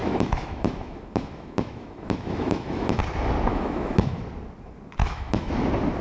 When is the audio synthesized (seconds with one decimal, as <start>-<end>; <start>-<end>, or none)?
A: 0.0-3.0; 3.5-4.2; 5.0-5.5

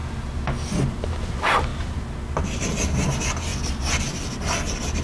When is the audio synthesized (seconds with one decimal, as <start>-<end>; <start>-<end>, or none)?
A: 0.0-0.7; 1.7-2.2

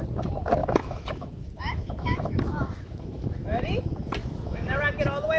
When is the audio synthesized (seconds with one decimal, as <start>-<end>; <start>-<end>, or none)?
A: 0.6-3.8; 4.2-4.8

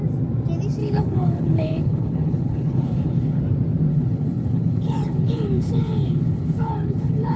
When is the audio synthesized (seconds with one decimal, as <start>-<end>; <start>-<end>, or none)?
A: 0.8-3.4; 3.9-7.4